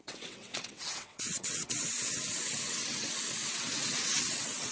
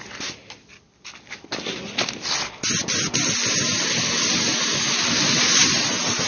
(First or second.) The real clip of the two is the second